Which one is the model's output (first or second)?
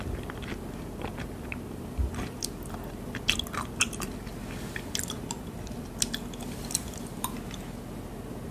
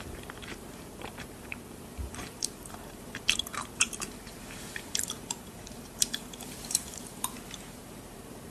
second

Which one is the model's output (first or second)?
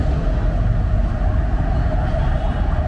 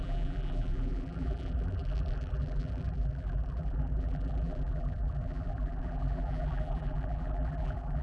second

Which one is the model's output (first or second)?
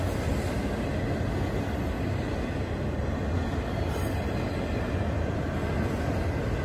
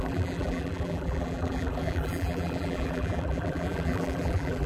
second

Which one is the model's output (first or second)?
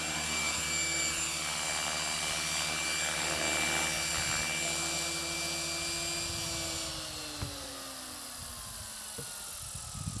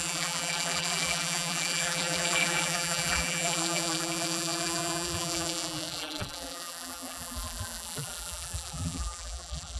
second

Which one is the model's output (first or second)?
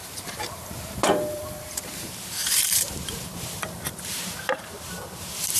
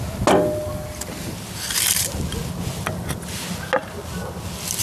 first